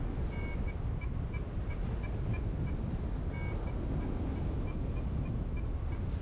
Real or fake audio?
real